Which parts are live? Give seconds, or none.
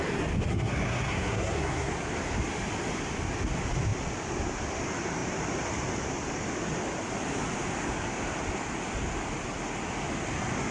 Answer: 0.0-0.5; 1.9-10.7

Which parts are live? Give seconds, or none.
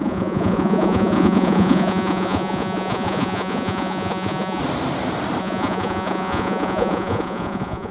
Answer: 4.6-5.4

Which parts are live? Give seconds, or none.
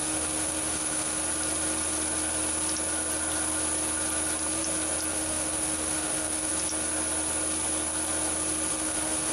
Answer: 1.2-5.1; 6.5-8.7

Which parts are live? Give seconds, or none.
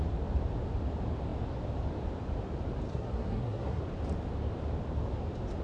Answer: 0.0-2.9; 3.8-5.6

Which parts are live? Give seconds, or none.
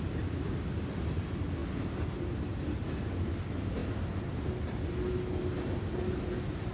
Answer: 0.0-6.7